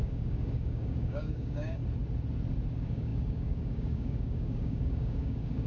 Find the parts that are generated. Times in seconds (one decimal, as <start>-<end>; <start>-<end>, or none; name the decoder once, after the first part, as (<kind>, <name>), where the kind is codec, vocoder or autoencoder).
0.0-1.8 (codec, DAC); 2.7-5.7